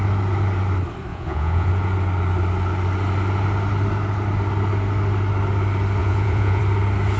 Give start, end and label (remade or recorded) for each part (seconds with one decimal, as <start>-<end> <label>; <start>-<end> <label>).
0.0-1.1 recorded; 1.1-1.7 remade; 1.7-6.0 recorded; 6.0-6.6 remade; 6.6-7.2 recorded